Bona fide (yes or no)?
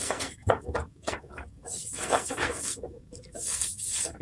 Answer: no